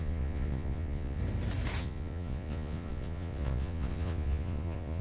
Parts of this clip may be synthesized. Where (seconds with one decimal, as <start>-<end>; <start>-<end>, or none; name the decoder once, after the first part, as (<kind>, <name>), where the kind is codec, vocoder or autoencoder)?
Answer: 0.0-1.2 (vocoder, Vocos); 1.8-5.0